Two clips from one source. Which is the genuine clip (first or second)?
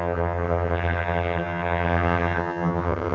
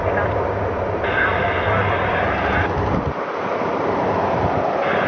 second